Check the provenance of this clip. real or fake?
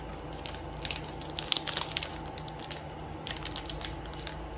real